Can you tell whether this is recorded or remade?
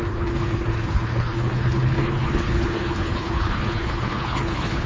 remade